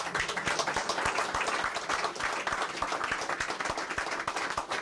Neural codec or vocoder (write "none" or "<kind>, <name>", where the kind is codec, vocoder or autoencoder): none